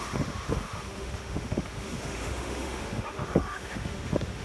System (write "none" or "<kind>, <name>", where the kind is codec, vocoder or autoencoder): autoencoder, DAC-VAE